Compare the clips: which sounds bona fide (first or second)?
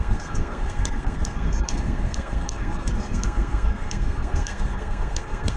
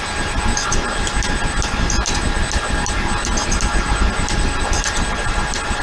second